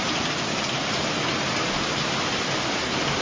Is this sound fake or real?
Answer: real